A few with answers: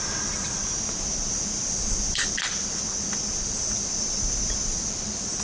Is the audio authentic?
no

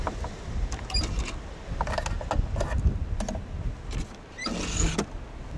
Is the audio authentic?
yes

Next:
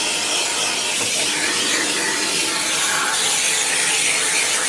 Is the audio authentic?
yes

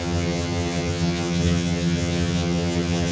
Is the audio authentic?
no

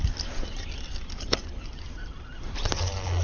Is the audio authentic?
yes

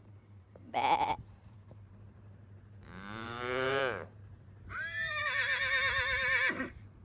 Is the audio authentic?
no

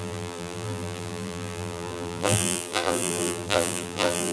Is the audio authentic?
no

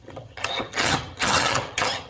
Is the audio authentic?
no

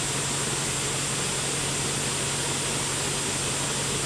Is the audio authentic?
yes